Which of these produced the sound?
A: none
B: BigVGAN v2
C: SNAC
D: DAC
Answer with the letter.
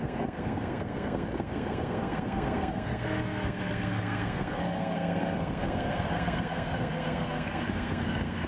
C